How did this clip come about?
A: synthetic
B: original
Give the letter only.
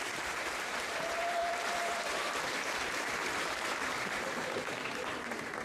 A